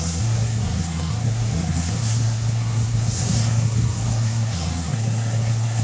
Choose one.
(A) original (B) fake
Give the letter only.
B